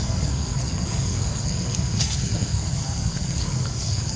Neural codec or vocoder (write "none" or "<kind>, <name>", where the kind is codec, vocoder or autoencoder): codec, SNAC